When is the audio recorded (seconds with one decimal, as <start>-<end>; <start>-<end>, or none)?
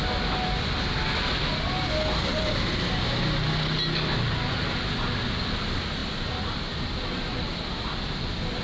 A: 0.0-8.6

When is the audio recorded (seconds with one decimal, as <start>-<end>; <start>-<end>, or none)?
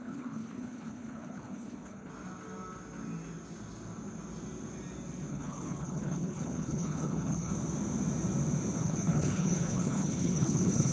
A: 2.1-5.3; 7.5-8.8